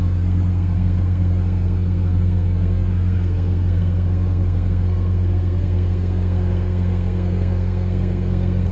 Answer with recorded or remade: remade